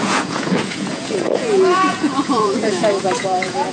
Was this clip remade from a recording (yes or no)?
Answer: yes